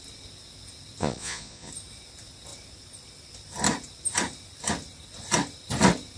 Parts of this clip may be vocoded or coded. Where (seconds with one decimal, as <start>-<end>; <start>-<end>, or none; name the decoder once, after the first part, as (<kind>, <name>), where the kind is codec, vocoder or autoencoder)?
1.0-1.7 (vocoder, Vocos)